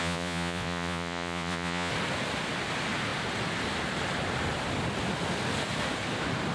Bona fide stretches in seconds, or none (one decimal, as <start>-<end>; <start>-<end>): 1.9-6.5